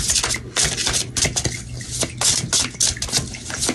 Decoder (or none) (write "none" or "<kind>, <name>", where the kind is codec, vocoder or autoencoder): none